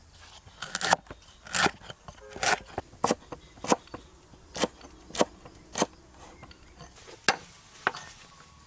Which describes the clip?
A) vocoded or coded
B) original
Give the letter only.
B